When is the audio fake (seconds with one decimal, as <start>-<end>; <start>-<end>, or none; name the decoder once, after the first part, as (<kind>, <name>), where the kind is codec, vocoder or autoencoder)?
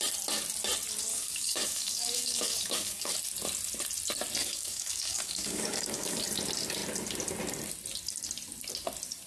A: 1.1-3.1 (codec, DAC); 4.4-6.2